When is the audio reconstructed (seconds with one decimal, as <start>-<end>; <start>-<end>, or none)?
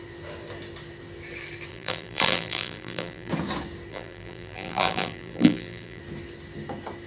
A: 1.7-3.3; 3.9-6.0